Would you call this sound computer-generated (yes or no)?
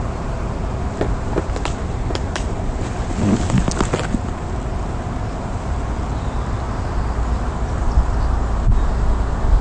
no